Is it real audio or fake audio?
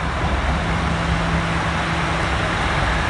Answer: real